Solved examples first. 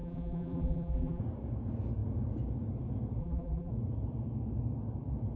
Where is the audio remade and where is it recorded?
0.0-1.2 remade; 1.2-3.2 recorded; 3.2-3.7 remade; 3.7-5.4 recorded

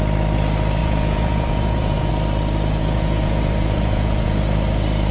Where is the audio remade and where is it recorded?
0.0-0.8 recorded; 0.8-2.1 remade; 2.1-2.8 recorded; 2.8-4.4 remade; 4.4-5.1 recorded

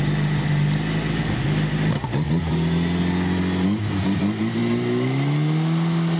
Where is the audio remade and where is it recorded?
0.0-6.2 recorded